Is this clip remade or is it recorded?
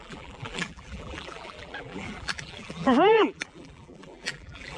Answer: remade